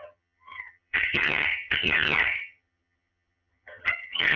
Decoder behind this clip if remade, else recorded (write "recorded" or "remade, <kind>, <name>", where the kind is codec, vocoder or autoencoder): remade, vocoder, HiFi-GAN